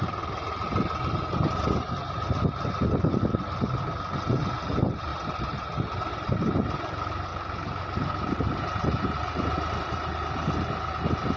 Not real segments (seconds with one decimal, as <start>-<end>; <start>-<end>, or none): none

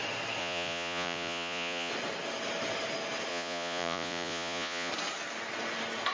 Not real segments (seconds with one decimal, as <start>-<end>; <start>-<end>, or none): 0.4-1.9; 3.3-4.9

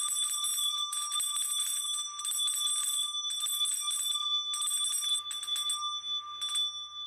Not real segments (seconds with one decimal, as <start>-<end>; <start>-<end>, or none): 0.5-2.2

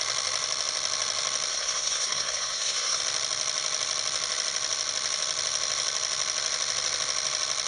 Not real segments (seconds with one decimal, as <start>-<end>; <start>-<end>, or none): 1.5-3.0